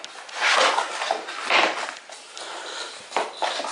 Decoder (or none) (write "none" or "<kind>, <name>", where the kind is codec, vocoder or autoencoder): none